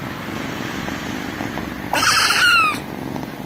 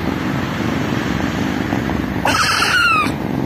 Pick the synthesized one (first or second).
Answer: second